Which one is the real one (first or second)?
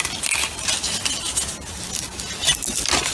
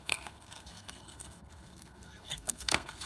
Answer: first